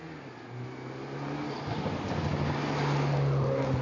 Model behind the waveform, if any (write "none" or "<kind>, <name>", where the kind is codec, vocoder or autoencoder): none